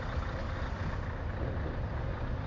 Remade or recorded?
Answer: recorded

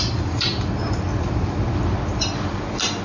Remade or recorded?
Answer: recorded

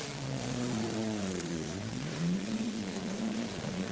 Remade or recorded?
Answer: remade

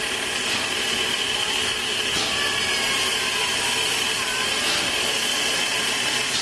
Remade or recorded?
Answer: remade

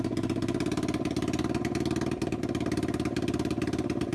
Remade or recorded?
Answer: recorded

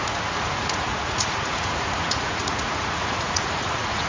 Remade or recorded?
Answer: remade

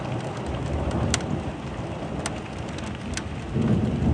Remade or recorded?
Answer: recorded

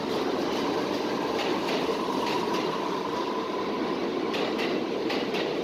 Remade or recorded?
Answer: recorded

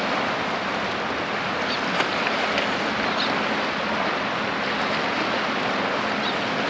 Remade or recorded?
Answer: recorded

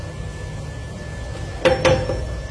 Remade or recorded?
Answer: recorded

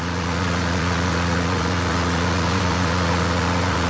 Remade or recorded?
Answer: remade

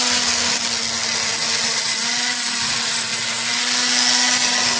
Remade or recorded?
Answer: recorded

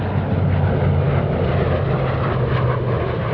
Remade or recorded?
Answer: recorded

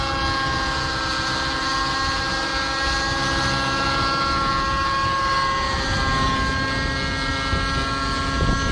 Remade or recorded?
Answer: recorded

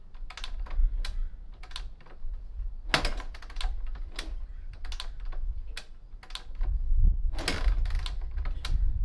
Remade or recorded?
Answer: recorded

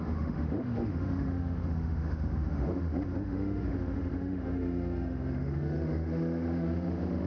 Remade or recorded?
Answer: remade